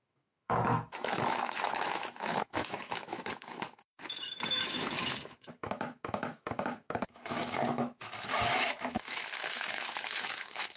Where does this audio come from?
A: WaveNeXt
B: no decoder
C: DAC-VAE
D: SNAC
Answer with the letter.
C